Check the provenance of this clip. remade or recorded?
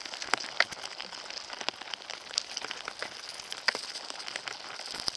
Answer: recorded